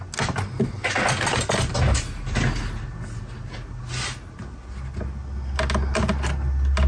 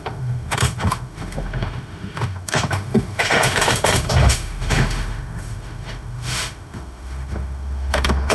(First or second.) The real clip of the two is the first